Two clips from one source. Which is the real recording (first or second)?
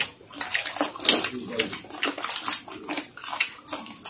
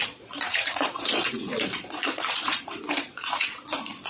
first